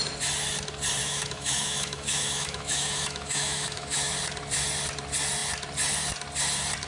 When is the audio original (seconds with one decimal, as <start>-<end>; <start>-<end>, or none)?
0.0-1.0; 4.1-6.9

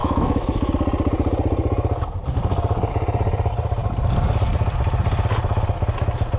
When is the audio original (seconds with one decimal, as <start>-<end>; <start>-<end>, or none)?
0.7-6.4

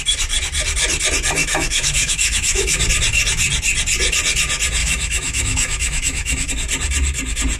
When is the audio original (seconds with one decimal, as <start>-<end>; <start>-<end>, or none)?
0.0-1.4; 2.8-4.8; 6.5-7.6